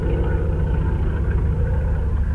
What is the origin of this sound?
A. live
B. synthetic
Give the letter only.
A